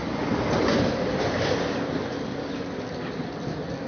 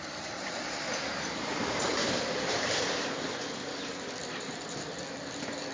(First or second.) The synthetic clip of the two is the second